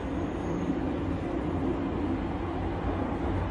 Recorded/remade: recorded